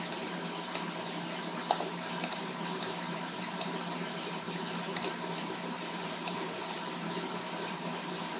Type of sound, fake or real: fake